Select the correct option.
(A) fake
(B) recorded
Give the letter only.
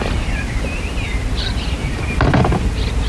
A